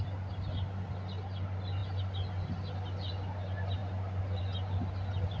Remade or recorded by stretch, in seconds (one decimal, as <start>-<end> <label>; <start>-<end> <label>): 0.0-5.4 recorded